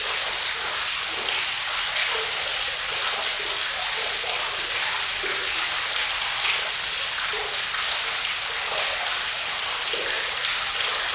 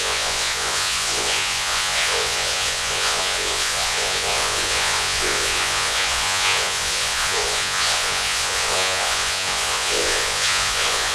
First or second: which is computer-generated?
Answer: second